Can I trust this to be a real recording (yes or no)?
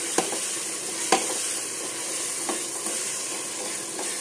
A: yes